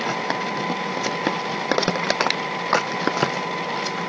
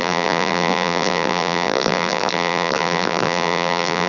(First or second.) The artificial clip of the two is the second